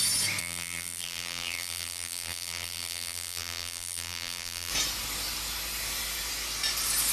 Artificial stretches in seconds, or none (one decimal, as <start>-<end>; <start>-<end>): 0.4-4.7